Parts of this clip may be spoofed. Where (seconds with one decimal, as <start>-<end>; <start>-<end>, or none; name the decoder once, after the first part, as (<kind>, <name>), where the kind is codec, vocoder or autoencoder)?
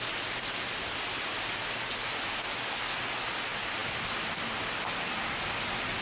none